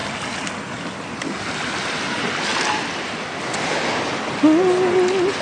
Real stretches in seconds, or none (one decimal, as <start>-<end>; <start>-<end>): 0.0-5.4